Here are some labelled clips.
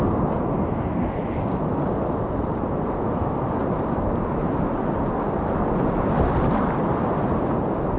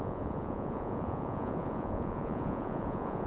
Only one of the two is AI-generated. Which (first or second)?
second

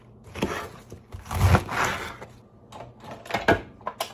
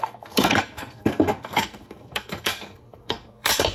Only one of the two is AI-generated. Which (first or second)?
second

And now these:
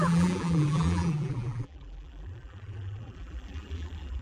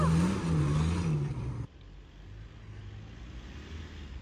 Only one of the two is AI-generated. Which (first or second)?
first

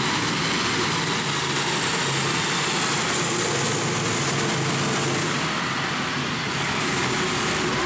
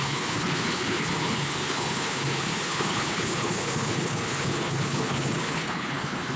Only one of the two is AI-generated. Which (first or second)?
second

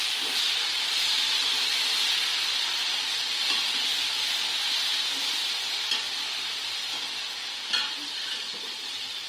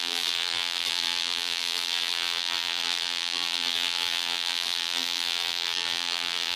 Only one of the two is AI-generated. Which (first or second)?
second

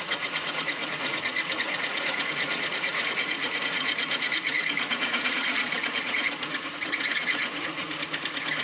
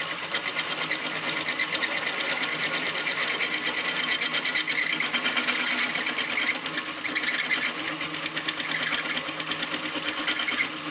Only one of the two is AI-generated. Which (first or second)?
first